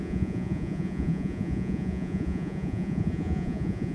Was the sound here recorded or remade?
remade